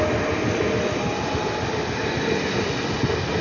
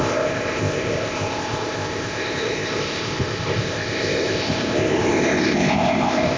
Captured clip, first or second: first